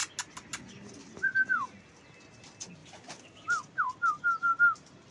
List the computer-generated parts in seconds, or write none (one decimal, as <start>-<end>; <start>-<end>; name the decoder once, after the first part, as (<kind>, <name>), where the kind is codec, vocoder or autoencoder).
none